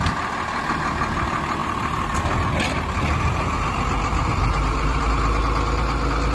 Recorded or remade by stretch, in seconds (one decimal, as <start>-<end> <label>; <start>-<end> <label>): 0.0-1.6 recorded; 1.6-5.4 remade; 5.4-6.3 recorded